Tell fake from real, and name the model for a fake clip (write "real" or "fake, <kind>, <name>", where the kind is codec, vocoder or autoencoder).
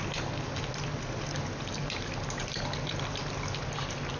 real